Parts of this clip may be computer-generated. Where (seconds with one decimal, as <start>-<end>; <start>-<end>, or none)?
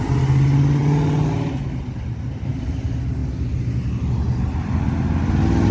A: none